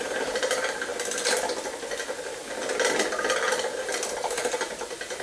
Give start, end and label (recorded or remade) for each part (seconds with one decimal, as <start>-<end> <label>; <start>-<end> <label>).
0.0-0.9 remade; 0.9-4.0 recorded; 4.0-5.2 remade